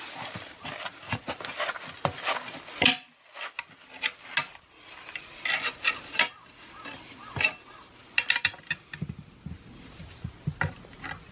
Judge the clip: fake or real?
real